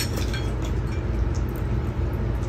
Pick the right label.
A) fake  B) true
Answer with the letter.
B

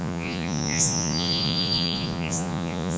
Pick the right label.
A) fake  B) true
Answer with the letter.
A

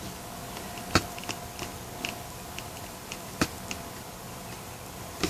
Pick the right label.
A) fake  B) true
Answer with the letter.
B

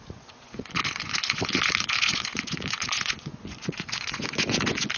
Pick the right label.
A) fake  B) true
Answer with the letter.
A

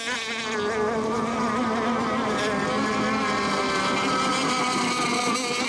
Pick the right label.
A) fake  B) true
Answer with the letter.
B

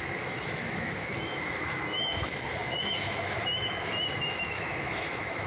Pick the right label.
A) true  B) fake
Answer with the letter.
B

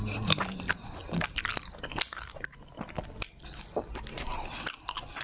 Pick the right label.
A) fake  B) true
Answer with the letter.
B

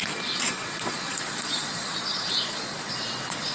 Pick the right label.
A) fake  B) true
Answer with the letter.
A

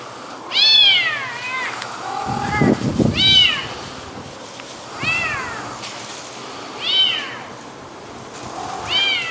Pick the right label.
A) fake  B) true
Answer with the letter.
B